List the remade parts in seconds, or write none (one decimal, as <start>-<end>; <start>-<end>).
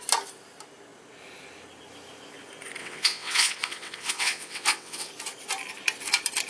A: 2.8-5.1